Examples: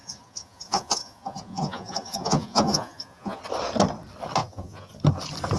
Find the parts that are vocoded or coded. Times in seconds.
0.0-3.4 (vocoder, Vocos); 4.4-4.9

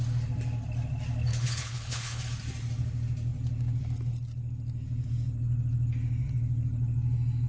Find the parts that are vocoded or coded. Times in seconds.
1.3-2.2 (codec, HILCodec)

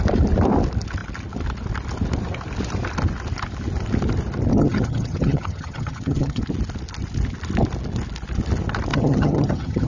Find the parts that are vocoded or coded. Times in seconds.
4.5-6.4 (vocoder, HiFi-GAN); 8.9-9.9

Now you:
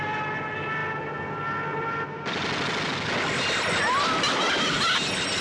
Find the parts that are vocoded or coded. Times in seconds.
none

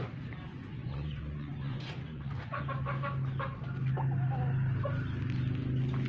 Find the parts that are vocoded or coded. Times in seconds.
0.5-2.6 (vocoder, Vocos)

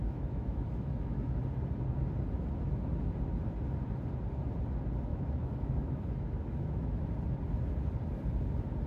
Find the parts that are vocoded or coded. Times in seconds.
0.0-1.4 (autoencoder, DAC-VAE); 5.1-7.0

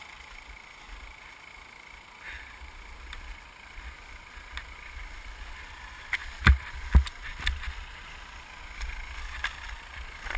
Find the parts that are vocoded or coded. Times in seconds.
none